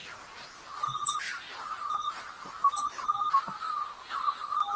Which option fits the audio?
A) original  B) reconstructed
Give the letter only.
A